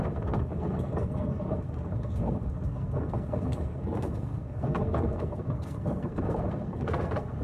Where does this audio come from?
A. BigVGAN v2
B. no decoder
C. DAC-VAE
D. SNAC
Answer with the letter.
D